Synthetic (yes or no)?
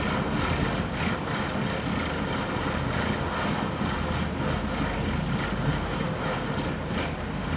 no